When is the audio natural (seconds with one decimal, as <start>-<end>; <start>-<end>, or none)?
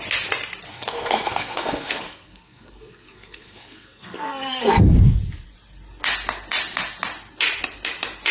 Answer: 0.0-0.7; 5.2-8.3